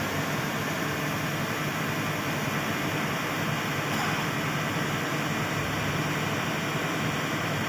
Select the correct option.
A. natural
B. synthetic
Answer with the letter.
A